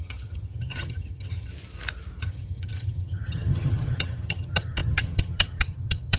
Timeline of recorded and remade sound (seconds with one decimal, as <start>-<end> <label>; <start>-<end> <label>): 0.0-1.5 remade; 1.5-2.2 recorded; 2.2-6.2 remade